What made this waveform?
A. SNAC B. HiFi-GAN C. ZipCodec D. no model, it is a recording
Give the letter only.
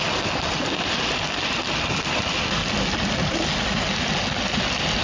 D